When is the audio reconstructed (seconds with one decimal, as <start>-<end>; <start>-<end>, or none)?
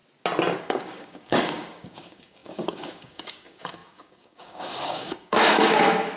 0.6-6.2